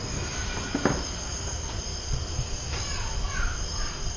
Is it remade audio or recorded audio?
recorded